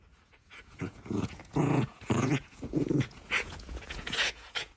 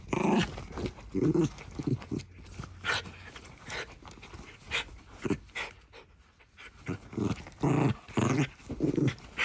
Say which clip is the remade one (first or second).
first